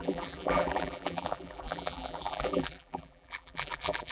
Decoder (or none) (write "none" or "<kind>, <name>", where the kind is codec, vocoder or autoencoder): vocoder, BigVGAN v2